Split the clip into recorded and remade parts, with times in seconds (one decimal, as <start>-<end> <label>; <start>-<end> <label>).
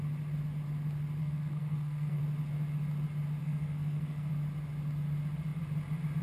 0.0-1.2 recorded; 1.2-2.2 remade; 2.2-3.4 recorded; 3.4-4.3 remade; 4.3-6.2 recorded